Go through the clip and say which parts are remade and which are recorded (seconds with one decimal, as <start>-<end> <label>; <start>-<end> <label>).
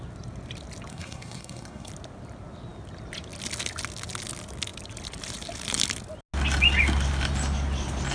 0.0-0.9 recorded; 0.9-1.9 remade; 1.9-8.1 recorded